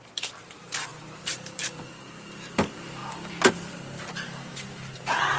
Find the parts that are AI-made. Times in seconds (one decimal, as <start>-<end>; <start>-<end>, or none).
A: 0.0-5.4